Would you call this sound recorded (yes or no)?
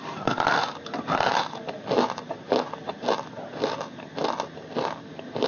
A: yes